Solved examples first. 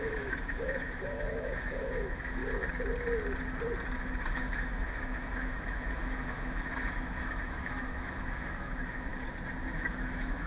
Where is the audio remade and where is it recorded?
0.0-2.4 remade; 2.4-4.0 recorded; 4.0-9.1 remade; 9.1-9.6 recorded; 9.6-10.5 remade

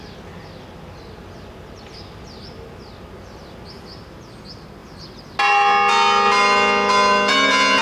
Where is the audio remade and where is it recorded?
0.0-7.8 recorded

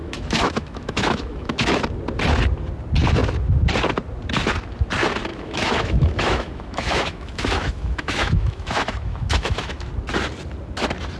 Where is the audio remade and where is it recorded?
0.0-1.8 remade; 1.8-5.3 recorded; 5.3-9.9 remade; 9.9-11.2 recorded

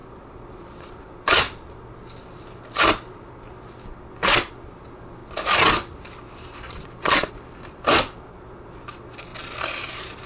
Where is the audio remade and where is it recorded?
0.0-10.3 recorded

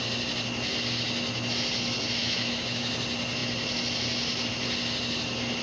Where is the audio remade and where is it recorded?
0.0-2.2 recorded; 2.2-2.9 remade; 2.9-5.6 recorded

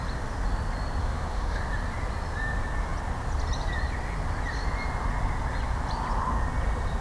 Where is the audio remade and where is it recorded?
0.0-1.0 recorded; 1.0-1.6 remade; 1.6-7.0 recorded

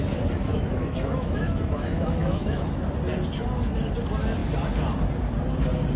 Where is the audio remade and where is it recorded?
0.0-0.5 recorded; 0.5-2.8 remade; 2.8-6.0 recorded

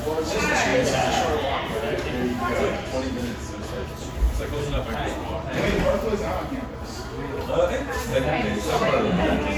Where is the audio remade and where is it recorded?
0.0-8.1 recorded; 8.1-9.2 remade; 9.2-9.6 recorded